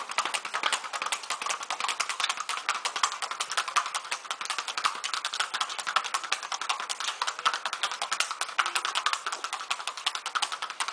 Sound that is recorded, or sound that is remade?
recorded